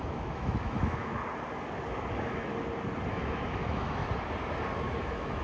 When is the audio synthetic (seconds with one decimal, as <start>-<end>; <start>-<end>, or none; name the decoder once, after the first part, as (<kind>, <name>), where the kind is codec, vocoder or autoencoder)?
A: 0.0-1.2 (autoencoder, DAC-VAE); 2.1-2.5; 3.1-4.0; 5.0-5.4